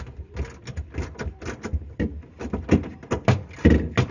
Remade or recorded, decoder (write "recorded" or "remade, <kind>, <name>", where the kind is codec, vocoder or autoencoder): recorded